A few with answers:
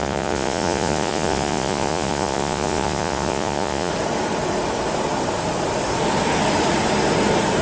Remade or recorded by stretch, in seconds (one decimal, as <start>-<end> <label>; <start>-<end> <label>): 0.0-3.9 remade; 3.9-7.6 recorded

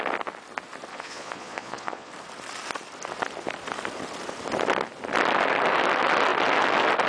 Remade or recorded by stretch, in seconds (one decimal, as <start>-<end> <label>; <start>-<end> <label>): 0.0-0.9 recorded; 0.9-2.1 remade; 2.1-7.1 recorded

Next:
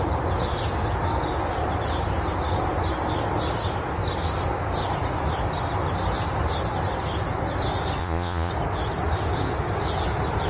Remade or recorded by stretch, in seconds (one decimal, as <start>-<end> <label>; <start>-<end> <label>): 0.0-8.0 recorded; 8.0-8.5 remade; 8.5-10.5 recorded

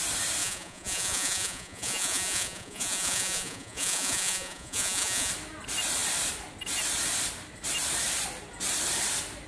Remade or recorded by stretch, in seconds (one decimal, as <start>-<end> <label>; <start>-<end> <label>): 0.0-0.4 recorded; 0.4-5.3 remade; 5.3-9.5 recorded

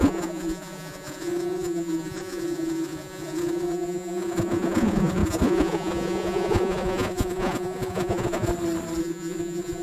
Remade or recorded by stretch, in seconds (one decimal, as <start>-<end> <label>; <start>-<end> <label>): 0.0-8.5 remade; 8.5-9.0 recorded; 9.0-9.8 remade

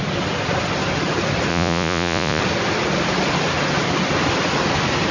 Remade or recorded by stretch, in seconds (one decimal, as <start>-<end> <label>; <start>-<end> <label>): 0.0-1.5 recorded; 1.5-2.4 remade; 2.4-5.1 recorded

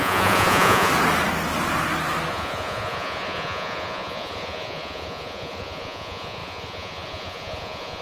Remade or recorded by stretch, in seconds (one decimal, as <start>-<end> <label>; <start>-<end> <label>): 0.0-0.9 remade; 0.9-2.3 recorded; 2.3-8.0 remade